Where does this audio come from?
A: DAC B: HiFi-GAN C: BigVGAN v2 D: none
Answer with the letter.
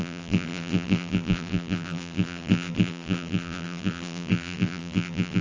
C